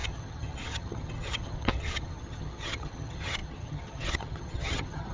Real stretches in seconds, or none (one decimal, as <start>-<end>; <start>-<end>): none